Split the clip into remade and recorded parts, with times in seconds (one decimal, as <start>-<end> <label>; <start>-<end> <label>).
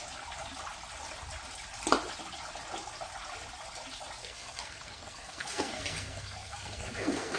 0.0-4.2 recorded; 4.2-7.4 remade